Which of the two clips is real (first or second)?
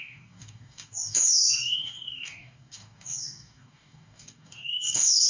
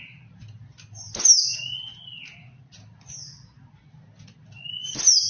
second